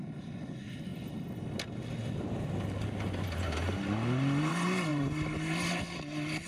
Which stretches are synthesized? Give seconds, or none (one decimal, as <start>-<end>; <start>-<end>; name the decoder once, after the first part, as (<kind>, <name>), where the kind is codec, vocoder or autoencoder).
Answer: 4.9-5.7 (vocoder, BigVGAN v2)